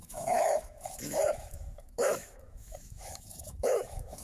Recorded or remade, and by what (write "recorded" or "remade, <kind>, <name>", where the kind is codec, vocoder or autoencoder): remade, autoencoder, DAC-VAE